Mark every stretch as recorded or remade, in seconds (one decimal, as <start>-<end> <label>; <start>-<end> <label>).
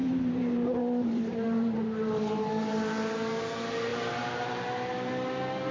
0.0-2.7 remade; 2.7-3.9 recorded; 3.9-5.1 remade; 5.1-5.7 recorded